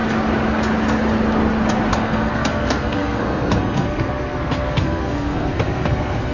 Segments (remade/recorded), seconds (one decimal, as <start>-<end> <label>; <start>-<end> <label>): 0.0-1.9 recorded; 1.9-6.3 remade